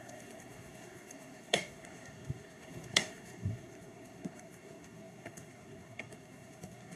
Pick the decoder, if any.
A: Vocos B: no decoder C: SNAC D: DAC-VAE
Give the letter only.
C